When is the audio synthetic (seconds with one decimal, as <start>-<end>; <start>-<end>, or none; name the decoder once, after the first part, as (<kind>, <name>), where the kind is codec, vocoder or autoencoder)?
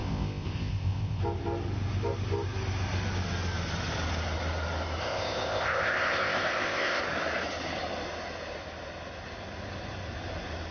0.0-1.2 (codec, ZipCodec); 5.0-7.0